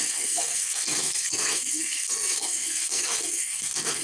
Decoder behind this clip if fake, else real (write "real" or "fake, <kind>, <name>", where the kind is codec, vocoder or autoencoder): fake, codec, SNAC